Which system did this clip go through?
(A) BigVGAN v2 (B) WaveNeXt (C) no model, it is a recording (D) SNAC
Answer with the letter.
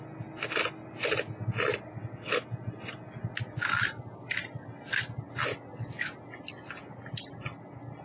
C